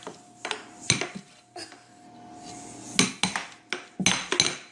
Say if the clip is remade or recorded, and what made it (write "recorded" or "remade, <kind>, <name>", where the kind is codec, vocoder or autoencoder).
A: recorded